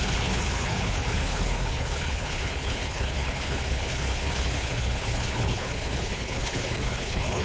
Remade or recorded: remade